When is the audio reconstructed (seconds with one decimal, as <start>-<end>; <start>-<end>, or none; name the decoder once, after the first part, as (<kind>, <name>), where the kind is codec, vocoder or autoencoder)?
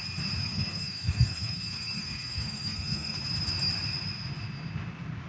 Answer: 0.4-3.2 (codec, SNAC)